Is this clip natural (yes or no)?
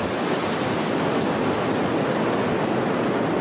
yes